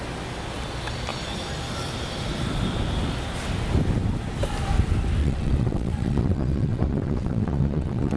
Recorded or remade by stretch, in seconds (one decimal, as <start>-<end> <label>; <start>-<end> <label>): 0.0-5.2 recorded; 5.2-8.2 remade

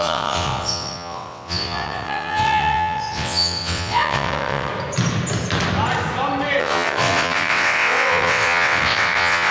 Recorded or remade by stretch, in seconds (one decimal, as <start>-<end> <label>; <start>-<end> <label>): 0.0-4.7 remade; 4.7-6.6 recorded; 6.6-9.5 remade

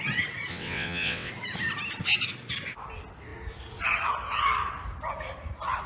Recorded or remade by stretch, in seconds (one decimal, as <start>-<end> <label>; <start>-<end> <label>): 0.0-0.5 recorded; 0.5-1.3 remade; 1.3-5.9 recorded